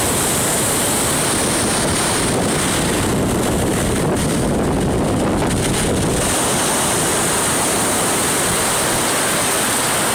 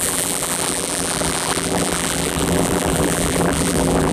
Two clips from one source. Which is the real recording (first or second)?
first